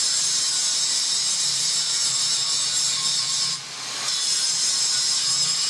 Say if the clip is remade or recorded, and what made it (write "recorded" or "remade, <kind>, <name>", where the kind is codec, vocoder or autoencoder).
recorded